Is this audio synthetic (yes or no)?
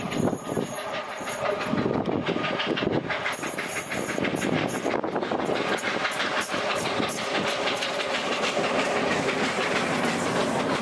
no